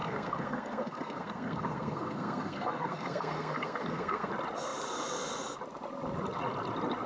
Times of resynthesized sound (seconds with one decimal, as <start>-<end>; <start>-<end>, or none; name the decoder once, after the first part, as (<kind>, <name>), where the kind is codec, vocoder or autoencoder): 0.0-4.3 (codec, SNAC)